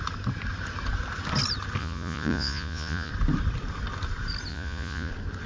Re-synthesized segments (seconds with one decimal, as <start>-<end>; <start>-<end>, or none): 1.8-3.1; 4.5-5.1

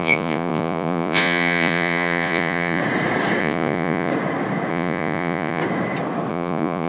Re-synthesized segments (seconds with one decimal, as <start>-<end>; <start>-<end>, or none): 0.0-2.8; 3.4-4.1; 4.7-5.6; 6.3-6.9